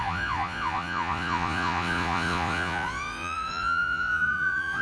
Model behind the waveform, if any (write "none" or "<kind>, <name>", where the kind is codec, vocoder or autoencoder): vocoder, Vocos